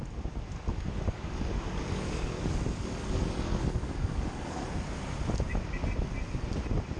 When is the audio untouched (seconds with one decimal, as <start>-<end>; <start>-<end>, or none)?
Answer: 0.0-0.7; 4.7-7.0